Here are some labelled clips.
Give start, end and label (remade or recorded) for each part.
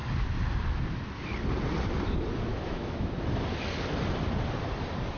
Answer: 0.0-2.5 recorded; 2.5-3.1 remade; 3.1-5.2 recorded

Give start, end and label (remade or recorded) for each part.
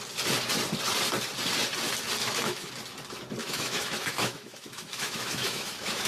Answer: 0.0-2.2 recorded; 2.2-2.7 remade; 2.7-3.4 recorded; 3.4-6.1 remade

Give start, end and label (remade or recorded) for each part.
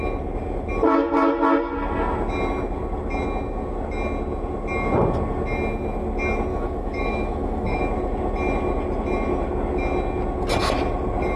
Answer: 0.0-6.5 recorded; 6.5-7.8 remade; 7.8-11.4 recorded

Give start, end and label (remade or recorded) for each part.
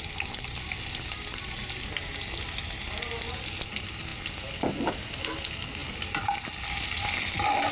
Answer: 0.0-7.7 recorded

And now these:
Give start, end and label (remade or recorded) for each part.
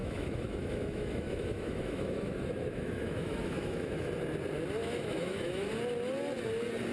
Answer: 0.0-4.1 remade; 4.1-4.8 recorded; 4.8-5.7 remade; 5.7-6.9 recorded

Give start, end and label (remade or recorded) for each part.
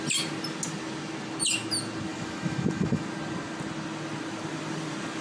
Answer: 0.0-2.1 recorded; 2.1-3.0 remade; 3.0-5.2 recorded